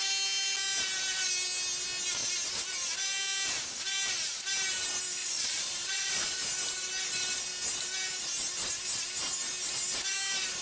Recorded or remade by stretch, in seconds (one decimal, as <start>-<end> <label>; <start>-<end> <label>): 0.0-5.2 recorded; 5.2-6.4 remade; 6.4-10.6 recorded